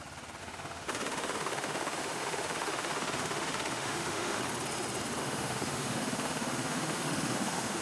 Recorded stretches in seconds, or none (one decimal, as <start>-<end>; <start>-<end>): 0.0-0.4; 4.4-5.2